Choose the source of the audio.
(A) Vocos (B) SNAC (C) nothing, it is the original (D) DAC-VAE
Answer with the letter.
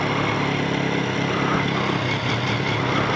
C